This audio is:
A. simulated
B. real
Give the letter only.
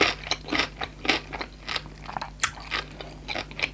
B